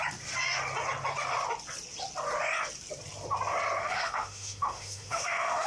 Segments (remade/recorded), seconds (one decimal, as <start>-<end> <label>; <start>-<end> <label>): 0.0-3.8 recorded; 3.8-5.7 remade